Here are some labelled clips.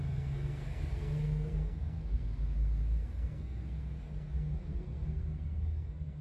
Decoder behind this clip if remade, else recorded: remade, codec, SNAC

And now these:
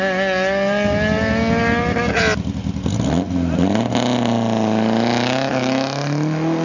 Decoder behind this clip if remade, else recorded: recorded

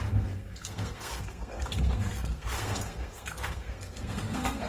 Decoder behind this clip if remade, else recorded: remade, codec, SNAC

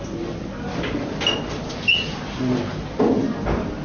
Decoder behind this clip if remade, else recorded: recorded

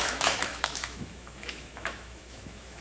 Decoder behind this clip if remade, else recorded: remade, autoencoder, DAC-VAE